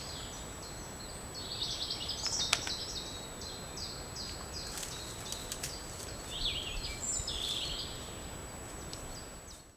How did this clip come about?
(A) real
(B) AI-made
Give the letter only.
A